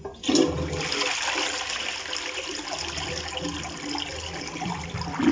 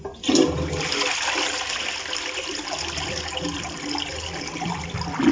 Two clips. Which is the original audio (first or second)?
first